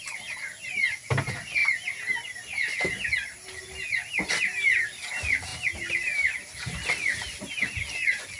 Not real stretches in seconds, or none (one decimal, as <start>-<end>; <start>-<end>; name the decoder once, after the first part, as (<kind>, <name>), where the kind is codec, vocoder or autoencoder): 0.0-1.6 (vocoder, BigVGAN v2); 4.1-5.5; 7.5-8.4